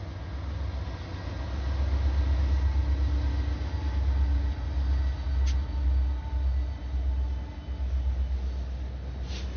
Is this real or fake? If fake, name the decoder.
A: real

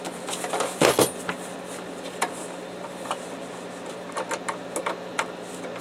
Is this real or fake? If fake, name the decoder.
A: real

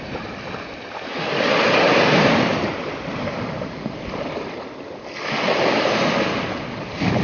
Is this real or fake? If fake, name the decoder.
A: real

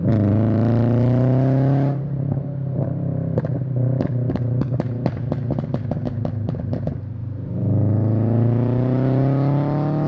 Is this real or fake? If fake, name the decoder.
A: fake, vocoder, BigVGAN v2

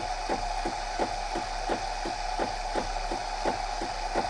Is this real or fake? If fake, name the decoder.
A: real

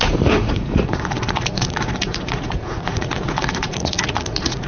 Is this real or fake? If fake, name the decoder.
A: fake, vocoder, Vocos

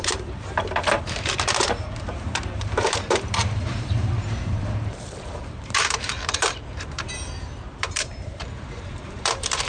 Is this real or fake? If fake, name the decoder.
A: fake, vocoder, BigVGAN v2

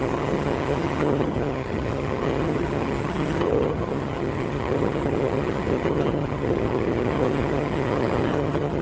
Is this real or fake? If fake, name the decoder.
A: fake, vocoder, HiFi-GAN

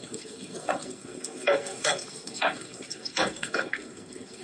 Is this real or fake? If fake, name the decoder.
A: fake, codec, SNAC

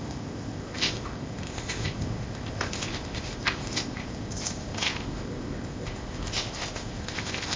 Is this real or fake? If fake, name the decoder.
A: fake, codec, ZipCodec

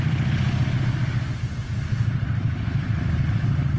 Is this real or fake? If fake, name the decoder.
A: real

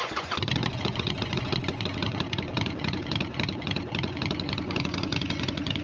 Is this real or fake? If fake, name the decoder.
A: fake, vocoder, Vocos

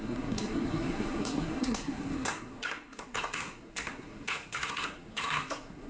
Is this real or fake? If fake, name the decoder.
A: fake, codec, SNAC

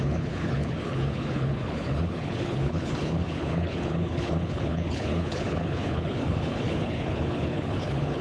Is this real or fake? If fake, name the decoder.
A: fake, codec, HILCodec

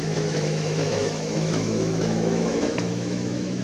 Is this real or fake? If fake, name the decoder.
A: fake, autoencoder, DAC-VAE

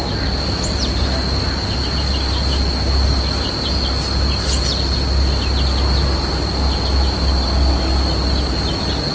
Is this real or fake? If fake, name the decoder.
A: real